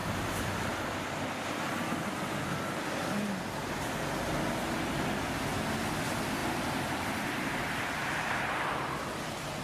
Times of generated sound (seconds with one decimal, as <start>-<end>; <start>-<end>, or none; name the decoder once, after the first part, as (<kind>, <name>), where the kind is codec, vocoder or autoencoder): 0.0-1.1 (vocoder, BigVGAN v2); 6.4-8.4